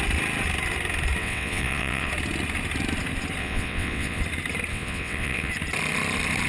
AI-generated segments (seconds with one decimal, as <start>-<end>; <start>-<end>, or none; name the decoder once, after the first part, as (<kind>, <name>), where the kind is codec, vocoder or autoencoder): 1.2-2.1 (vocoder, WaveNeXt); 3.4-4.2; 4.7-5.5